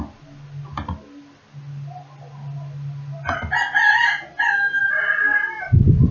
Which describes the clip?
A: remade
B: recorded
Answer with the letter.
B